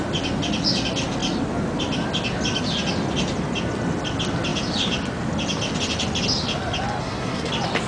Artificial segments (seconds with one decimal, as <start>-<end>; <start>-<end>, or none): 7.0-7.5